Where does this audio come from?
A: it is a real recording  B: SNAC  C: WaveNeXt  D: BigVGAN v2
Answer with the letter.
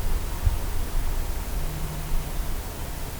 A